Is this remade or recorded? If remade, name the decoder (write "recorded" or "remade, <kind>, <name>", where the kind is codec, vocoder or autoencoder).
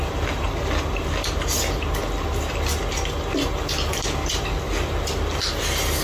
recorded